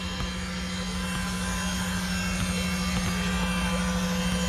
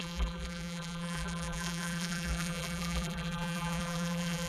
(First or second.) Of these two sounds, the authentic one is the first